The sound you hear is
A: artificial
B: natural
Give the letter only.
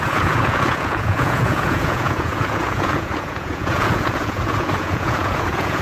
A